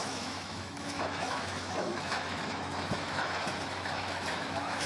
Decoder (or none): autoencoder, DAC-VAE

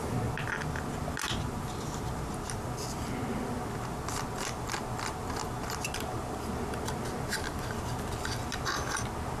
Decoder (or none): none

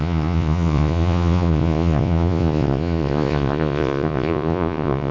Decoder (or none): vocoder, Vocos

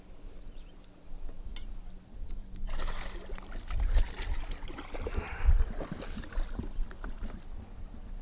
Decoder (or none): none